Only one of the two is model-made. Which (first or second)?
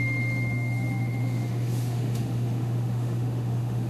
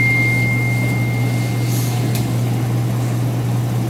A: first